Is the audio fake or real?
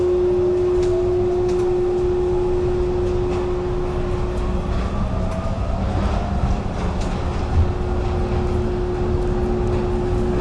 real